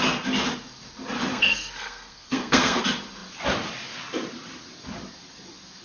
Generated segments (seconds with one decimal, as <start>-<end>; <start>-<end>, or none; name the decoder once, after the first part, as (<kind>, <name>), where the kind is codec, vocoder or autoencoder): 1.3-2.8 (codec, SNAC)

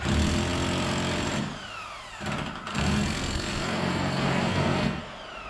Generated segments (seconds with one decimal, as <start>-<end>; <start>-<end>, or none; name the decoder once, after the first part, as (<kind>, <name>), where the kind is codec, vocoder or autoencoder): 2.7-5.0 (codec, SNAC)

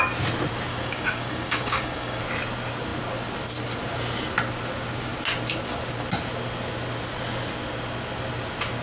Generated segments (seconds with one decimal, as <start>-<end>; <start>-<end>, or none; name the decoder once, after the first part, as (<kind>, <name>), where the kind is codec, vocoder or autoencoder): 0.7-2.2 (codec, DAC)

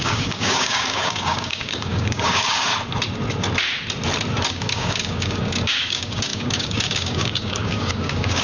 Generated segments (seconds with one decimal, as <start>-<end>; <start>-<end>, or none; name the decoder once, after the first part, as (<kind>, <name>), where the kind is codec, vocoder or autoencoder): 0.0-2.7 (codec, DAC); 4.5-8.4

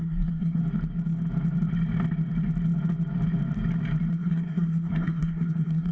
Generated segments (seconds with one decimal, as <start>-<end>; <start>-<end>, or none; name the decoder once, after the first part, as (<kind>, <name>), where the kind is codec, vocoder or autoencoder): 0.0-0.6 (codec, SNAC); 4.1-5.9

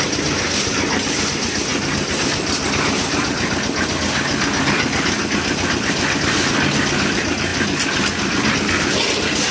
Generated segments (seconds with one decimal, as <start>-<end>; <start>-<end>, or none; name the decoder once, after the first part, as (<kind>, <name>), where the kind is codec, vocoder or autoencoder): none

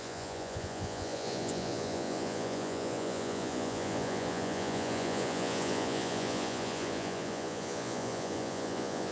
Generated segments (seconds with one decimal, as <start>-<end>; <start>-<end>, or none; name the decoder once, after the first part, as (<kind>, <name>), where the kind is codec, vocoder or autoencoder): 0.0-9.1 (vocoder, Vocos)